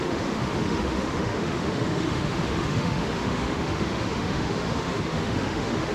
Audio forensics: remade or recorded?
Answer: remade